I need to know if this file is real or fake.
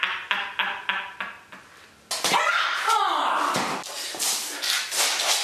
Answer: real